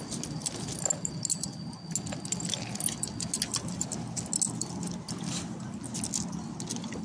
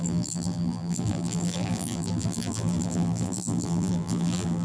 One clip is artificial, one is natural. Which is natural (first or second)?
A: first